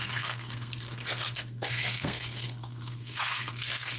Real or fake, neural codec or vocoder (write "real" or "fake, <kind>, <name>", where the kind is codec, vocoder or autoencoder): fake, codec, SNAC